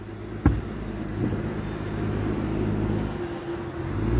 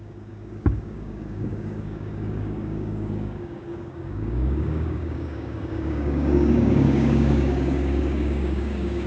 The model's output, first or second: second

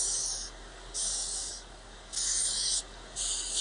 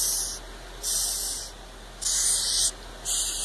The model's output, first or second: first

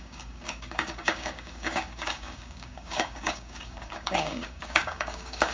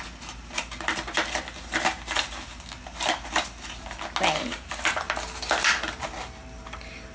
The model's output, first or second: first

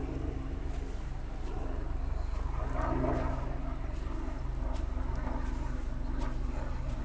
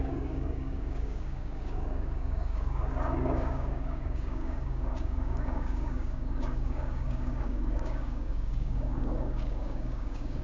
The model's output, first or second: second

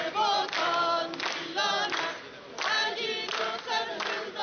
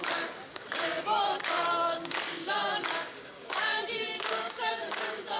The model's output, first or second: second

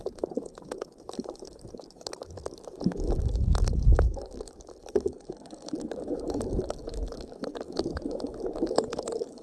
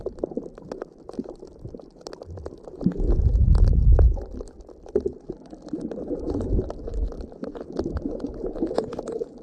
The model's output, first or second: first